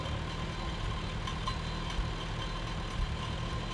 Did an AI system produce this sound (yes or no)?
no